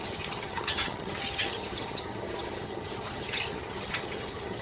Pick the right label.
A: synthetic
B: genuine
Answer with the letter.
A